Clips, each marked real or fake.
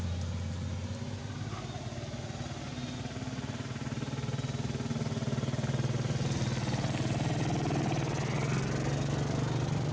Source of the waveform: real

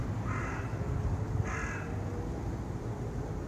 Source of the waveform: real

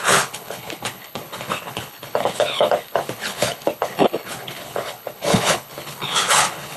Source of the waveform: fake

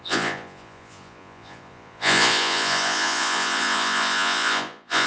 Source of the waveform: fake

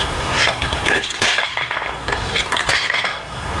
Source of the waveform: fake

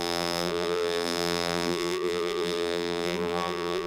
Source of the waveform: fake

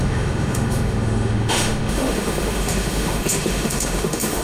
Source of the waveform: fake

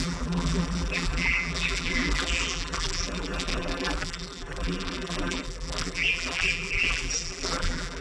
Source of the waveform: fake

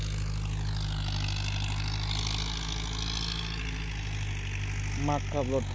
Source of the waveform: real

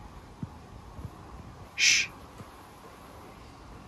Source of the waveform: real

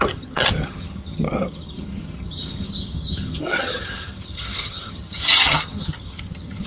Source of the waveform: fake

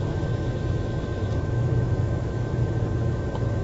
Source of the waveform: fake